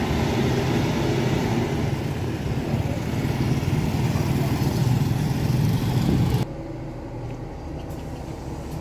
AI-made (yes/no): no